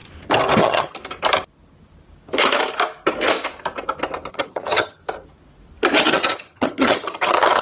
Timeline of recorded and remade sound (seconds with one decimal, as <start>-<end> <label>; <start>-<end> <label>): 0.0-0.6 recorded; 0.6-1.0 remade; 1.0-4.3 recorded; 4.3-5.0 remade; 5.0-6.0 recorded; 6.0-7.6 remade